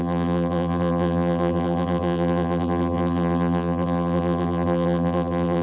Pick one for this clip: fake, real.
fake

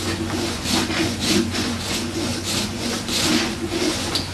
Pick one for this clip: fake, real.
fake